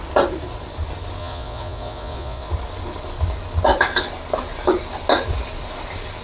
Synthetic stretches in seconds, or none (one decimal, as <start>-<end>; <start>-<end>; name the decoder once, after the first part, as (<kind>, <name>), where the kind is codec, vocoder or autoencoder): 1.2-2.5 (vocoder, Vocos)